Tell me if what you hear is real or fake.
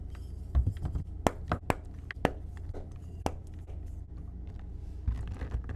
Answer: real